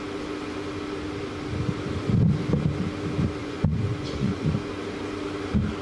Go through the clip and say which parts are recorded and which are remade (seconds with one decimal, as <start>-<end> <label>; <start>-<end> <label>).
0.0-3.4 recorded; 3.4-4.5 remade; 4.5-5.8 recorded